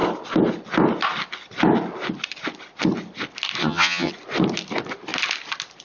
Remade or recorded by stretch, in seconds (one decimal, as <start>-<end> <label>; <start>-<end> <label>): 0.0-3.6 recorded; 3.6-4.1 remade; 4.1-5.8 recorded